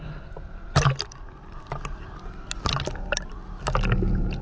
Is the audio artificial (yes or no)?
no